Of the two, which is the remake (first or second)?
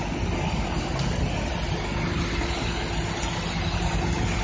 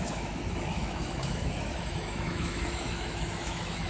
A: second